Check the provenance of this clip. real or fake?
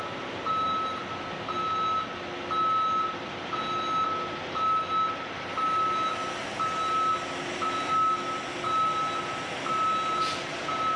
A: real